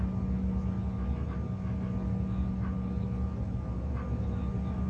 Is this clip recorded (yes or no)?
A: yes